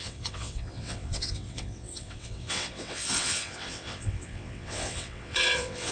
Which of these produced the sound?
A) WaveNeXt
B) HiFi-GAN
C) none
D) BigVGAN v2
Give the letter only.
A